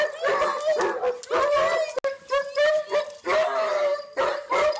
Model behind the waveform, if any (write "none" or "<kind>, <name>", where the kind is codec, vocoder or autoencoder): none